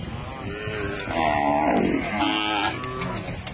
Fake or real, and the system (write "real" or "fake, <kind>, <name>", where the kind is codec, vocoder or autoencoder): real